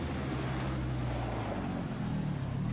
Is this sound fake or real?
real